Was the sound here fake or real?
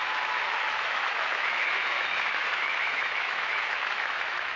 fake